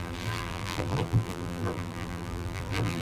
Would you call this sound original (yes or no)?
no